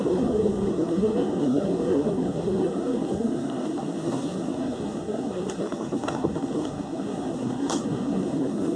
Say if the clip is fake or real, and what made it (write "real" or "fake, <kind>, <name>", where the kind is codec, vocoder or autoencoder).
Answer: fake, codec, SNAC